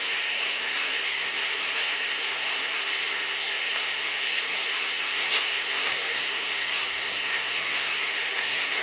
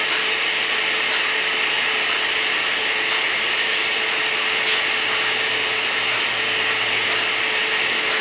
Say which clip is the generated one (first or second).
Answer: first